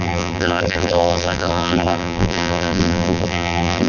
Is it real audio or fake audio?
fake